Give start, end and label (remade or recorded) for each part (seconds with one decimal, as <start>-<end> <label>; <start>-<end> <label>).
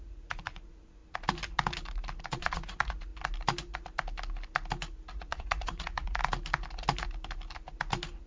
0.0-1.0 remade; 1.0-2.2 recorded; 2.2-3.1 remade; 3.1-5.1 recorded; 5.1-6.2 remade; 6.2-8.3 recorded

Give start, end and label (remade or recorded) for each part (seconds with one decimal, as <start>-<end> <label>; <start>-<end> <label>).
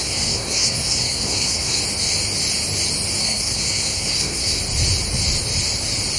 0.0-1.8 remade; 1.8-3.2 recorded; 3.2-4.6 remade; 4.6-6.2 recorded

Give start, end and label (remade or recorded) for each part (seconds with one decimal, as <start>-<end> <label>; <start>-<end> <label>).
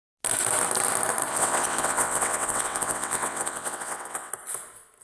0.0-1.3 recorded; 1.3-4.3 remade; 4.3-5.0 recorded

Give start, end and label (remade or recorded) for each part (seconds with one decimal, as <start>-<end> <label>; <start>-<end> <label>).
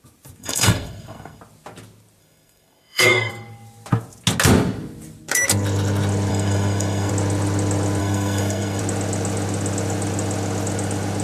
0.0-0.4 recorded; 0.4-1.4 remade; 1.4-2.2 recorded; 2.2-3.3 remade; 3.3-6.3 recorded; 6.3-7.1 remade; 7.1-8.0 recorded; 8.0-8.8 remade; 8.8-11.2 recorded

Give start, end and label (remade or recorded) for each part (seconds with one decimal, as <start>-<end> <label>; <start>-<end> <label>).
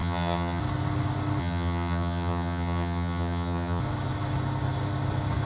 0.0-0.6 remade; 0.6-1.4 recorded; 1.4-3.8 remade; 3.8-5.4 recorded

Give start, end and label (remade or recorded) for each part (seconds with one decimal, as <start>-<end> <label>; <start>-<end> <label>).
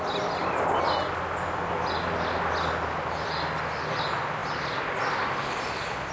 0.0-6.1 recorded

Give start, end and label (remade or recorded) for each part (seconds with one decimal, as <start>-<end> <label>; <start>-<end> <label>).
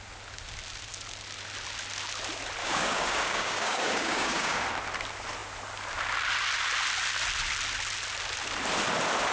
0.0-2.6 recorded; 2.6-4.6 remade; 4.6-9.3 recorded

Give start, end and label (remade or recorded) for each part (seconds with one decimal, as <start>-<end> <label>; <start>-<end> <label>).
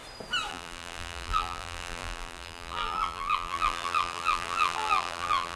0.0-0.5 recorded; 0.5-5.6 remade